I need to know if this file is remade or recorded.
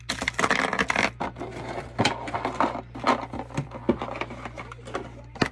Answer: recorded